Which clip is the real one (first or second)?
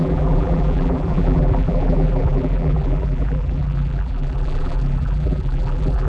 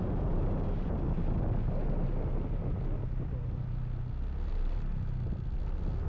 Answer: second